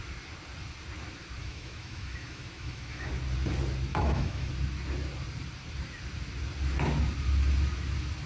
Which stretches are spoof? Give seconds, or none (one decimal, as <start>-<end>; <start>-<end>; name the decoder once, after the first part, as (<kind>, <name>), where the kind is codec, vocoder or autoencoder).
1.4-3.1 (autoencoder, DAC-VAE); 3.9-4.5